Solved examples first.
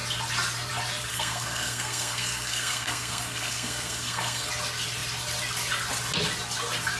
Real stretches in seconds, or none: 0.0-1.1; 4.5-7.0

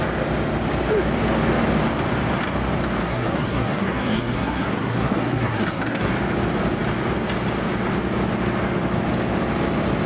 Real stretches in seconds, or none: 0.0-3.0; 6.1-10.1

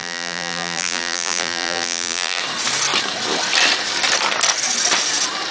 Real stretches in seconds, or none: 2.4-5.5

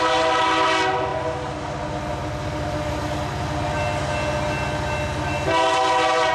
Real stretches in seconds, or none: 0.0-6.3

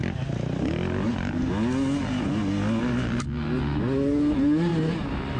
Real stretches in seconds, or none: 0.0-5.4

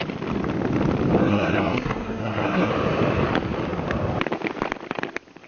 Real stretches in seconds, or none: 0.0-1.2; 2.7-5.5

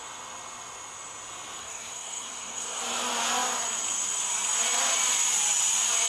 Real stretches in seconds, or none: 0.0-1.6; 2.8-6.1